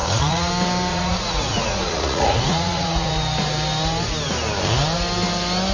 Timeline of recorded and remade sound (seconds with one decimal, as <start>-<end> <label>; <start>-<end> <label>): 0.0-0.5 remade; 0.5-0.9 recorded; 0.9-3.1 remade; 3.1-5.7 recorded